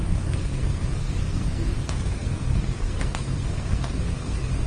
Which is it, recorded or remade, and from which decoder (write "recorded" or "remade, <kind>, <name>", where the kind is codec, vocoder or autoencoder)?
remade, codec, SNAC